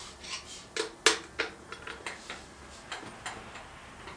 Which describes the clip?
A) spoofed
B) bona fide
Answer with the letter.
B